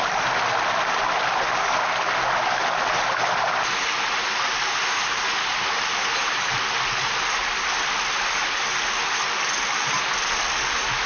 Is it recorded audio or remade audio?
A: recorded